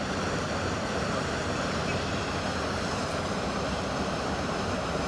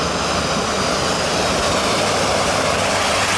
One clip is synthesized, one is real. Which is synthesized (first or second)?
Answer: first